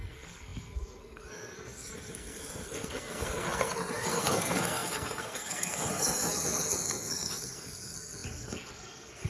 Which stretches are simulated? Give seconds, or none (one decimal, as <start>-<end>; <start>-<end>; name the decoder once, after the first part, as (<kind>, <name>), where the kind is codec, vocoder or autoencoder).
0.0-9.3 (codec, SNAC)